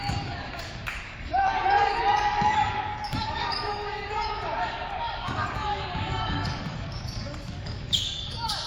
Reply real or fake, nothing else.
fake